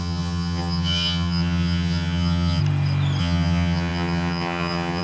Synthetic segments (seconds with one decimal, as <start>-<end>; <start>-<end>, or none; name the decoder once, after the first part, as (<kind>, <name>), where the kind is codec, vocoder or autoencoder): 0.0-2.6 (vocoder, HiFi-GAN); 3.2-5.0